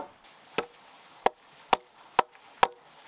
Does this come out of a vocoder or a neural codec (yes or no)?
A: no